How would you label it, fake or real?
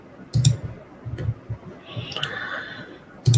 real